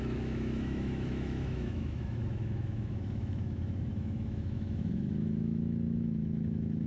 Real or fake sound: fake